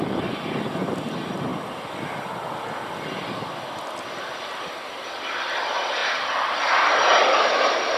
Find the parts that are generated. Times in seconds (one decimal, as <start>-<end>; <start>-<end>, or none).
1.5-2.6; 6.0-8.0